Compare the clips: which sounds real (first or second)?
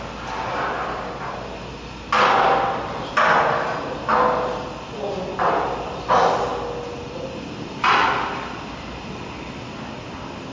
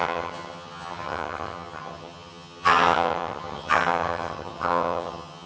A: first